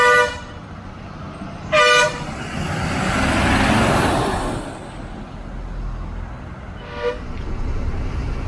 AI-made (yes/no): no